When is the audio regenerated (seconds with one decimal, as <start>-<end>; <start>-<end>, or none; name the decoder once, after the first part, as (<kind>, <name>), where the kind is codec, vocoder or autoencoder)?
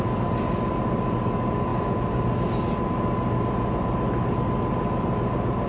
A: none